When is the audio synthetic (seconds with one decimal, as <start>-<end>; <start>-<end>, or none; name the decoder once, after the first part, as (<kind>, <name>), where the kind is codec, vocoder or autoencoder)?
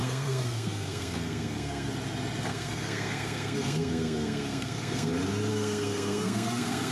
0.0-1.9 (codec, SNAC); 2.5-5.1; 5.5-6.9